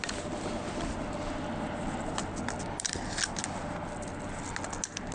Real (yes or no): yes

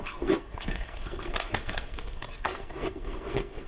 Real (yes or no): no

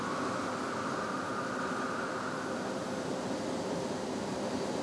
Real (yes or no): yes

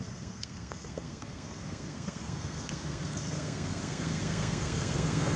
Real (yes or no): no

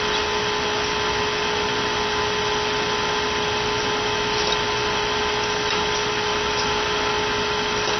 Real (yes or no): yes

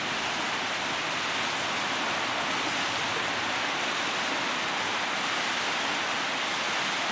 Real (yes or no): yes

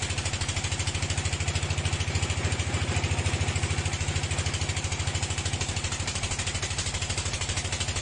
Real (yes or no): yes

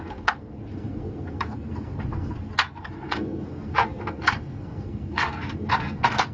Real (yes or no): no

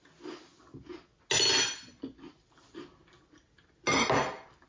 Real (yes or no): yes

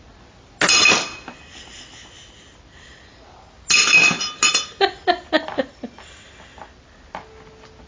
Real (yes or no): yes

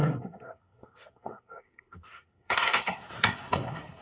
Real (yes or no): no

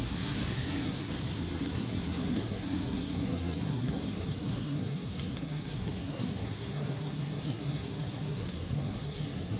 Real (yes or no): no